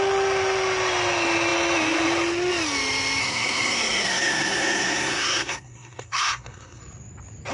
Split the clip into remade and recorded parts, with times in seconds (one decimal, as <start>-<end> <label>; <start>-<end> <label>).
0.0-3.2 recorded; 3.2-6.8 remade; 6.8-7.5 recorded